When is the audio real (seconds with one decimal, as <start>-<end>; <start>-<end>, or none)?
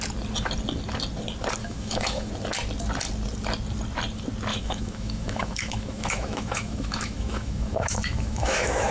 0.0-1.6; 2.3-4.5